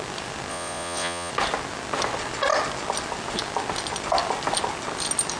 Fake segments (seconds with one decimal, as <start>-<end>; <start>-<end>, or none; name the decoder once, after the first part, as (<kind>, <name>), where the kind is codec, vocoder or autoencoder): 0.5-1.3 (vocoder, Vocos)